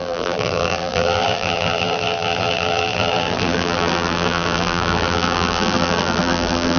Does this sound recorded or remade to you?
remade